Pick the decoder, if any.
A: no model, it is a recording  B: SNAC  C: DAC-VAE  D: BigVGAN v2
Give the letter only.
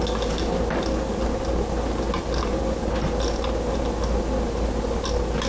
A